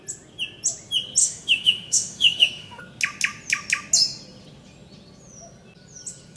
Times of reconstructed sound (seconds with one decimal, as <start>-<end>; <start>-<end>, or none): 1.2-2.8